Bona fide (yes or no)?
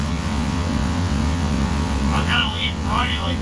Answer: no